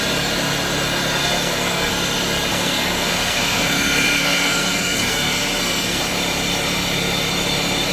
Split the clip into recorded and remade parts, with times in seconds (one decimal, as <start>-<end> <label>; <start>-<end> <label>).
0.0-1.2 recorded; 1.2-1.9 remade; 1.9-2.5 recorded; 2.5-6.0 remade; 6.0-7.9 recorded

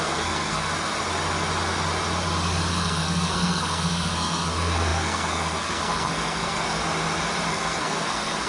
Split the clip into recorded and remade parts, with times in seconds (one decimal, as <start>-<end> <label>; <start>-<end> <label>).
0.0-0.7 remade; 0.7-2.7 recorded; 2.7-6.8 remade; 6.8-7.5 recorded; 7.5-8.5 remade

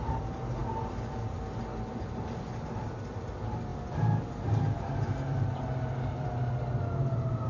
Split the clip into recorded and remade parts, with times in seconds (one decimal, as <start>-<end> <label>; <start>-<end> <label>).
0.0-7.5 recorded

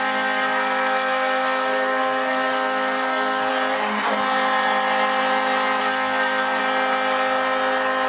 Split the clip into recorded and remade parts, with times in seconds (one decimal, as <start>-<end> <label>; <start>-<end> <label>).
0.0-3.5 remade; 3.5-5.8 recorded; 5.8-6.6 remade; 6.6-8.1 recorded

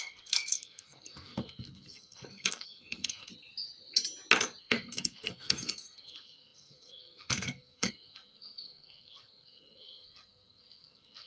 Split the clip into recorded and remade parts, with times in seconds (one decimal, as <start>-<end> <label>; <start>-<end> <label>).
0.0-3.3 remade; 3.3-4.6 recorded; 4.6-11.3 remade

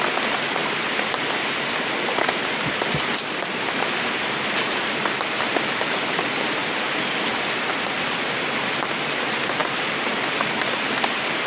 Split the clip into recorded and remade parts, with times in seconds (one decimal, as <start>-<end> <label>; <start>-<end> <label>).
0.0-11.5 recorded